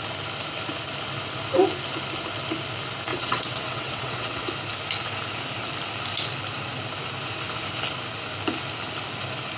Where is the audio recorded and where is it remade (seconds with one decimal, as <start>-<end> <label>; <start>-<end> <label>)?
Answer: 0.0-3.1 recorded; 3.1-4.5 remade; 4.5-9.6 recorded